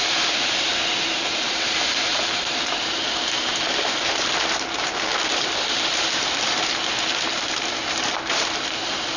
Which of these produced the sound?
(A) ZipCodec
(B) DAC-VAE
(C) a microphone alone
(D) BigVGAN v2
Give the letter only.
D